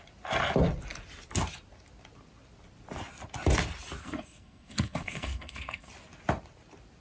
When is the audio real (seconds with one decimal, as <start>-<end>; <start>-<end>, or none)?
0.0-4.0; 5.9-7.0